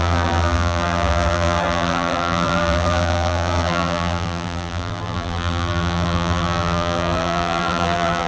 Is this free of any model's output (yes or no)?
no